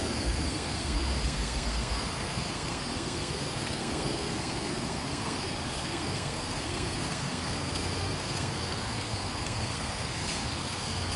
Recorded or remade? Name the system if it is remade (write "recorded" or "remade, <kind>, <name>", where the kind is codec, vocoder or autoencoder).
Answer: remade, codec, SNAC